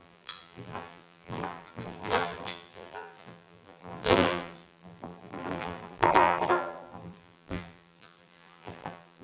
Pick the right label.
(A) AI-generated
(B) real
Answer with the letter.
A